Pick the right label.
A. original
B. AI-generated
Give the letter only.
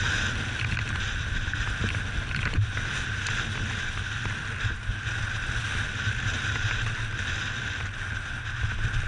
A